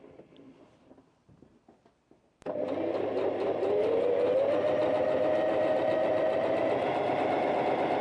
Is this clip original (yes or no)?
yes